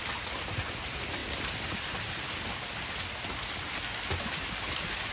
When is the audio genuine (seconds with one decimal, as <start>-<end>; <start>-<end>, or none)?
0.0-5.1